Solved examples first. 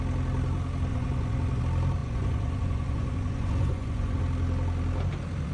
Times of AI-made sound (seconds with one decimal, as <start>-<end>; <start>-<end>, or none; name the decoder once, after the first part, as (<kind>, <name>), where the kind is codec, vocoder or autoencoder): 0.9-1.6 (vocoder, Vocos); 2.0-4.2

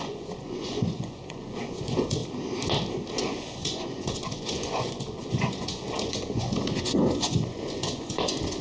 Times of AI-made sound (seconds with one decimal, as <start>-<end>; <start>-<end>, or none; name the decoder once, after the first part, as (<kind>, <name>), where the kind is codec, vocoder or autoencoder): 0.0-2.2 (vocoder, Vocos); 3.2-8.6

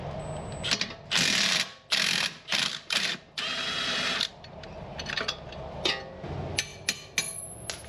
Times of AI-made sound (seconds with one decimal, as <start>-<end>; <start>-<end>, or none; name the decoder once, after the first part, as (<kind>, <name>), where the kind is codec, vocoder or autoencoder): none